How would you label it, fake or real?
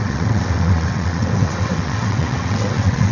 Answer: fake